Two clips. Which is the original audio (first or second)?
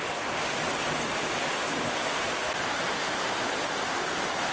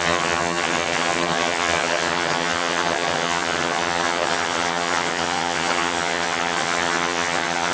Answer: first